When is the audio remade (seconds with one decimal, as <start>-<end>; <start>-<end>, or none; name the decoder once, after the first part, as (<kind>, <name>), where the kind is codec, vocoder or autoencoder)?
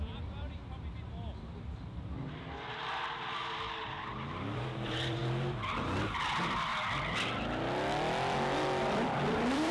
0.0-0.6 (vocoder, BigVGAN v2); 4.4-5.2; 6.0-6.7; 8.8-9.7